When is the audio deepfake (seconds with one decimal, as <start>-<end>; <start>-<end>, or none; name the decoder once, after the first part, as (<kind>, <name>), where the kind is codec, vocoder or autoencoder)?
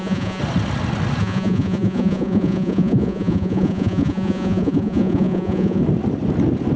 0.0-0.4 (vocoder, Vocos); 1.2-5.8